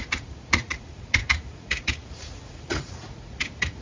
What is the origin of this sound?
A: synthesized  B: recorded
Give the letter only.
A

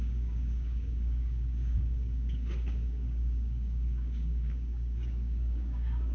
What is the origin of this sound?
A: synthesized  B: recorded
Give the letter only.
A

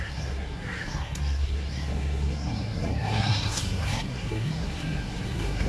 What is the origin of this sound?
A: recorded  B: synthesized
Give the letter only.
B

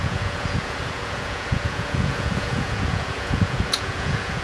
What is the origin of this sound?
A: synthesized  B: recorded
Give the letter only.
A